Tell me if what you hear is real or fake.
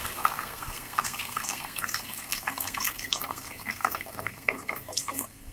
fake